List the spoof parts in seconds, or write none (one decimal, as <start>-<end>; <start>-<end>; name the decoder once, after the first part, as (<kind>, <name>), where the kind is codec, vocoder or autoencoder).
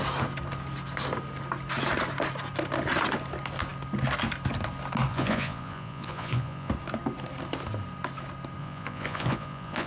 5.1-6.7 (vocoder, Vocos); 8.6-9.9